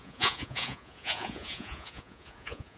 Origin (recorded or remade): remade